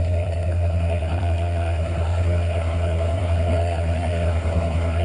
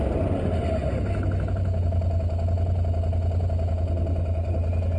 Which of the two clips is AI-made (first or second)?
first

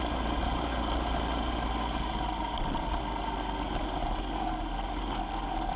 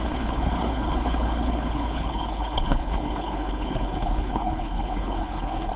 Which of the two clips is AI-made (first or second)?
second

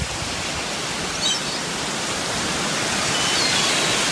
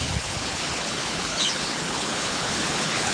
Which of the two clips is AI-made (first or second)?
second